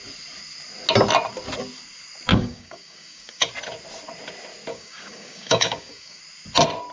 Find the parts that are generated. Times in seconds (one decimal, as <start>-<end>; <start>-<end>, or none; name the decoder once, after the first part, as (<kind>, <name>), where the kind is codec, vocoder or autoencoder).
2.3-3.5 (codec, DAC); 4.7-6.2